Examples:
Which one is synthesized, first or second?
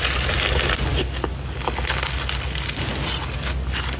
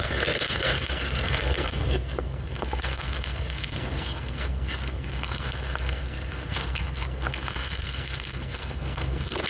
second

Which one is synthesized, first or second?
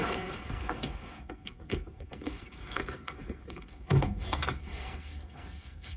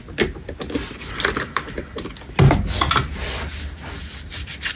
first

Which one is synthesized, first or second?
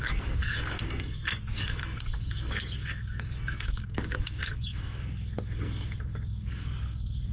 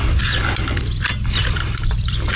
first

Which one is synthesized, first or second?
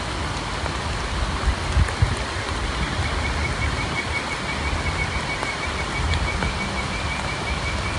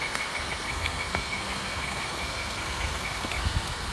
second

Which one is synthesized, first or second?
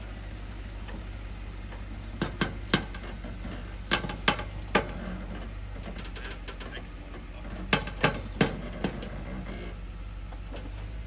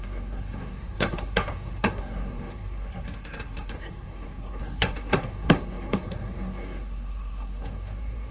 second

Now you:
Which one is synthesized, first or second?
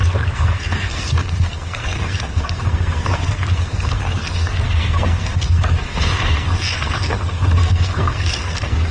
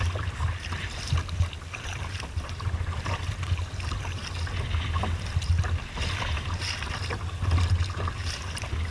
first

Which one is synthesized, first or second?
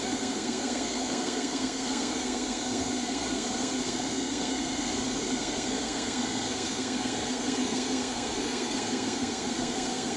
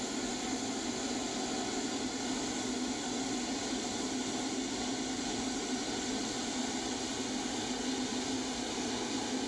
first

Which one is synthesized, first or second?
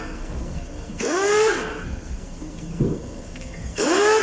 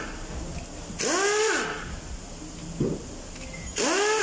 first